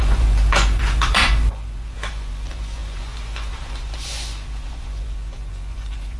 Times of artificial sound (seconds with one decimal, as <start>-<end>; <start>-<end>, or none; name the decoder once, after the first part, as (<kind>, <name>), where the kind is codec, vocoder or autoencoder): 0.0-6.2 (vocoder, Vocos)